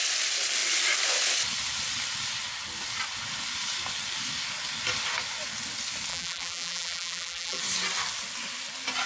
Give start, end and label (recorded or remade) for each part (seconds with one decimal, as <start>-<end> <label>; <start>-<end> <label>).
0.0-6.1 recorded; 6.1-7.6 remade; 7.6-9.1 recorded